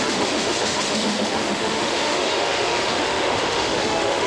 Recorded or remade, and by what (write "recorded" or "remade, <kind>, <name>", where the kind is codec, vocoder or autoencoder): remade, autoencoder, DAC-VAE